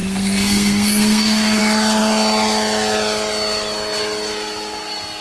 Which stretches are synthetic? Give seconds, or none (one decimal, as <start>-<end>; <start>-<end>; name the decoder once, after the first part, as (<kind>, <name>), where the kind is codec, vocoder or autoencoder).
0.0-1.6 (codec, SNAC)